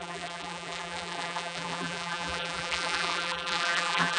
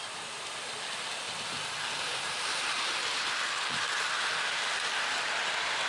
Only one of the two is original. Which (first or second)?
second